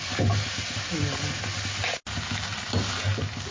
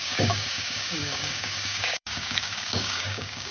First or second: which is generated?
second